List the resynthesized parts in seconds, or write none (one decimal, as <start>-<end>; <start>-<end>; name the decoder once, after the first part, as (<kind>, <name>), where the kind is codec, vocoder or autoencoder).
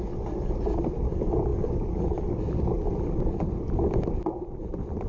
none